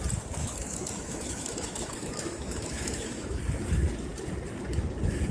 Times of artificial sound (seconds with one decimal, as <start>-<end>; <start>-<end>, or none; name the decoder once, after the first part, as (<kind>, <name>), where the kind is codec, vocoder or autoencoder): 0.4-3.4 (autoencoder, DAC-VAE)